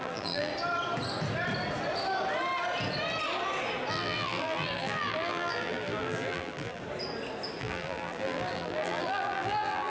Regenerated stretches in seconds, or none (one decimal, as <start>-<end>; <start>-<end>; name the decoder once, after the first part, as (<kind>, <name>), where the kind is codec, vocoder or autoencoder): 0.0-0.5 (vocoder, BigVGAN v2); 3.9-6.8; 7.6-9.9